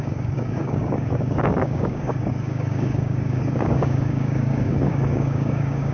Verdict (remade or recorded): remade